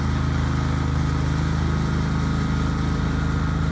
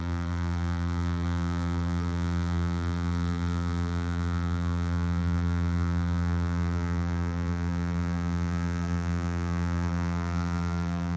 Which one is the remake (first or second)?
second